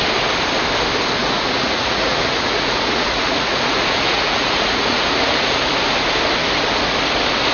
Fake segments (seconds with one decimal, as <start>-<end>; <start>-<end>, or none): 1.2-5.7